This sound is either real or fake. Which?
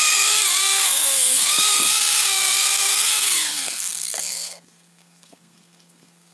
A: fake